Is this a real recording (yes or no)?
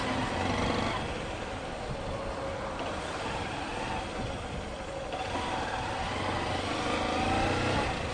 yes